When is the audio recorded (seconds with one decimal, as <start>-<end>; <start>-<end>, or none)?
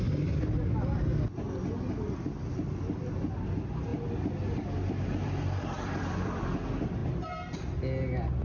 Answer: 0.0-3.9; 6.4-8.4